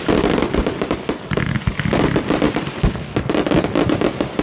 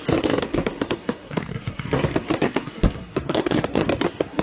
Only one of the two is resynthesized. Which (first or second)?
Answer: second